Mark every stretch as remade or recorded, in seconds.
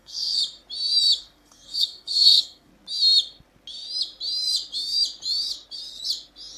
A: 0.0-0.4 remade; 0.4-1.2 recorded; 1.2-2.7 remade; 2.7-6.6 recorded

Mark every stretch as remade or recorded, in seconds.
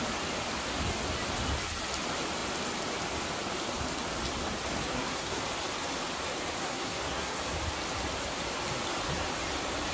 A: 0.0-4.9 recorded; 4.9-5.4 remade; 5.4-6.6 recorded; 6.6-7.4 remade; 7.4-9.9 recorded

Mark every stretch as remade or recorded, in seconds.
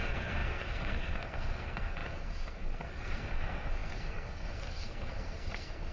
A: 0.0-5.9 remade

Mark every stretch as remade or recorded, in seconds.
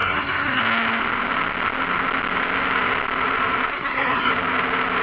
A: 0.0-0.6 remade; 0.6-3.7 recorded; 3.7-4.3 remade; 4.3-5.0 recorded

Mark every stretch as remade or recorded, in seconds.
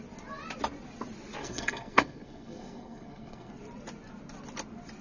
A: 0.0-1.4 recorded; 1.4-3.5 remade; 3.5-5.0 recorded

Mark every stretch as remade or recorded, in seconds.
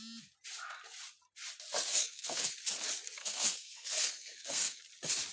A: 0.0-2.0 recorded; 2.0-2.5 remade; 2.5-3.2 recorded; 3.2-4.8 remade; 4.8-5.3 recorded